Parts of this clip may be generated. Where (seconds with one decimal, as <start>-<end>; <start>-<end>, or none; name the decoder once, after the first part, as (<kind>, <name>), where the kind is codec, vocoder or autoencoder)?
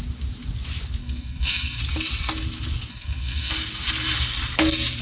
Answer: 1.0-1.8 (codec, SNAC); 2.9-3.5